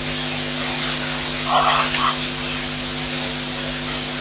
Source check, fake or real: real